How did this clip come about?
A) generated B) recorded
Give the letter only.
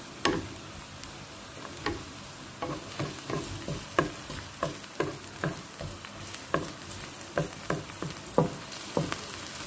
B